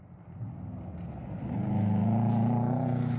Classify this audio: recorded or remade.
recorded